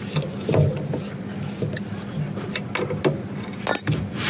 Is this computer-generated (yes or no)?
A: no